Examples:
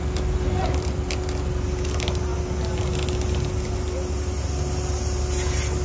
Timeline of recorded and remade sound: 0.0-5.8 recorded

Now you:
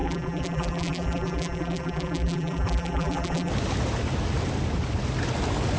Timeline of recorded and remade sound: 0.0-3.5 remade; 3.5-5.8 recorded

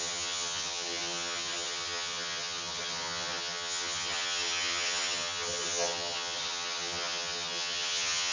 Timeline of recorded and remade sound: 0.0-8.3 remade

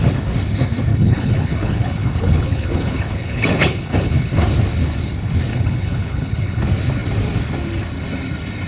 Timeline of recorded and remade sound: 0.0-0.9 recorded; 0.9-4.4 remade; 4.4-5.5 recorded; 5.5-6.6 remade; 6.6-8.7 recorded

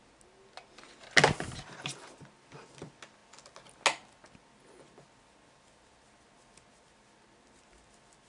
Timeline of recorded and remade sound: 0.0-8.3 recorded

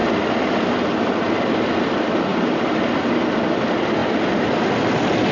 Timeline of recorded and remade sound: 0.0-2.3 recorded; 2.3-2.8 remade; 2.8-5.3 recorded

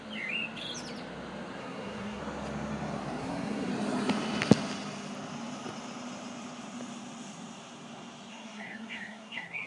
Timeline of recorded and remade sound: 0.0-1.6 recorded; 1.6-2.2 remade; 2.2-3.2 recorded; 3.2-3.7 remade; 3.7-8.3 recorded; 8.3-9.7 remade

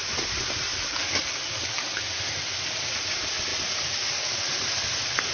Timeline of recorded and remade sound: 0.0-0.7 recorded; 0.7-2.0 remade; 2.0-5.3 recorded